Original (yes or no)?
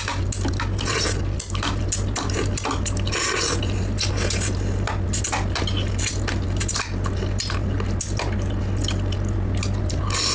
yes